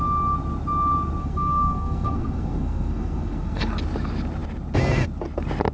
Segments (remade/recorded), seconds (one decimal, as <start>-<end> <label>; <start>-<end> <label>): 0.0-1.2 recorded; 1.2-3.7 remade; 3.7-5.7 recorded